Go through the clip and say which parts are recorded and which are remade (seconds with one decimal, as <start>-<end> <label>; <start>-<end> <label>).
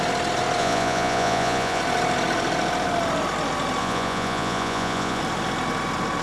0.0-0.6 recorded; 0.6-1.8 remade; 1.8-3.8 recorded; 3.8-5.2 remade; 5.2-6.2 recorded